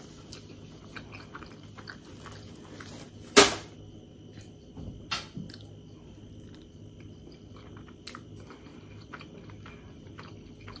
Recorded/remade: recorded